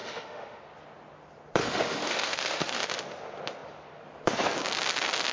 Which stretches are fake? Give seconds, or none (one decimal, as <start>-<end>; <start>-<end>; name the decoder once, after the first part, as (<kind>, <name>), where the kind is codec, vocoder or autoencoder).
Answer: 0.0-0.6 (autoencoder, DAC-VAE); 1.6-3.0